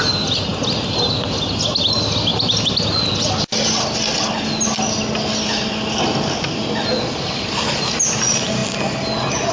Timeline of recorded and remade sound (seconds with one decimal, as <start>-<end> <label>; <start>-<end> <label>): 0.0-9.5 recorded